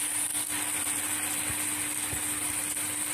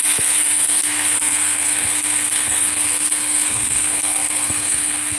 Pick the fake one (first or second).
second